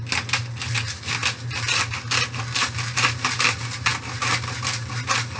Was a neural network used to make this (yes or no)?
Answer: no